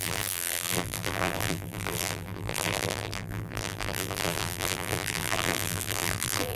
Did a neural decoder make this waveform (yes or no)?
yes